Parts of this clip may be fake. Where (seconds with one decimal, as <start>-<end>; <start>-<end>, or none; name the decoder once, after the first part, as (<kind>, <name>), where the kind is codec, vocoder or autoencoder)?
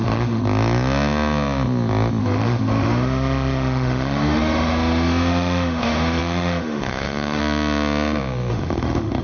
0.0-0.4 (autoencoder, DAC-VAE); 2.2-7.4; 8.5-9.2